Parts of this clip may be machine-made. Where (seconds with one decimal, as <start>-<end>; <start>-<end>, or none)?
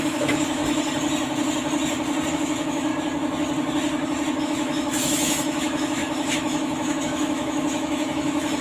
0.0-0.6; 2.3-2.9; 4.4-8.6